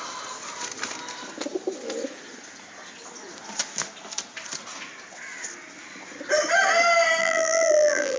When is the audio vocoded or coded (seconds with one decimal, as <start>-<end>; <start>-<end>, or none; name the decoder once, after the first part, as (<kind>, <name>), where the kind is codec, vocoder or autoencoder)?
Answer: 7.2-8.2 (vocoder, BigVGAN v2)